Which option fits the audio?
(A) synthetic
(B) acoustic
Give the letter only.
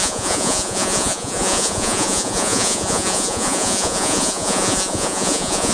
A